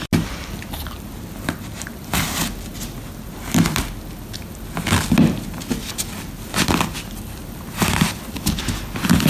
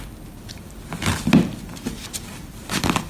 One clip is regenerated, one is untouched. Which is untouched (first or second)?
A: first